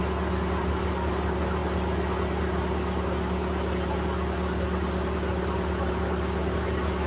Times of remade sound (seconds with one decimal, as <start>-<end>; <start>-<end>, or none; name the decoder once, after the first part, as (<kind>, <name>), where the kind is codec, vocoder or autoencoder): none